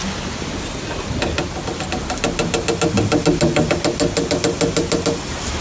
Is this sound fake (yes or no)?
no